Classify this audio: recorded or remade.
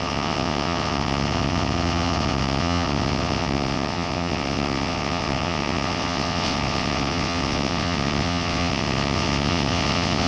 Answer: remade